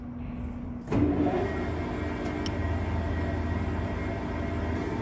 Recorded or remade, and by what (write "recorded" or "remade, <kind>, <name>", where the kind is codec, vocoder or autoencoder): recorded